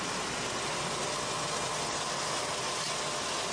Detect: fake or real real